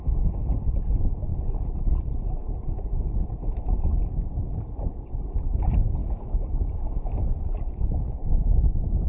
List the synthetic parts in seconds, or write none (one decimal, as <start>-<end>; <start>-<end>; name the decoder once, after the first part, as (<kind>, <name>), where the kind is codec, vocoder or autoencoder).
6.0-7.2 (autoencoder, DAC-VAE)